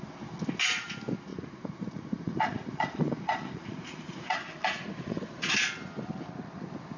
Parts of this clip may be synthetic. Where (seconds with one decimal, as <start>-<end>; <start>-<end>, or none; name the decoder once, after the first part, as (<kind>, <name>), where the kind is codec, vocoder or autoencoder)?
1.3-5.5 (vocoder, Vocos)